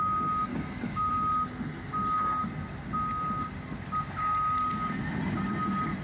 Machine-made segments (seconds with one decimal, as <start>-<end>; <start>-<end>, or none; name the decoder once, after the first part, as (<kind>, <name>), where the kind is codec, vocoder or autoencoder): 0.5-1.1 (codec, DAC)